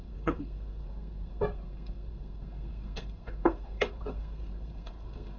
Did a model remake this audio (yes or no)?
yes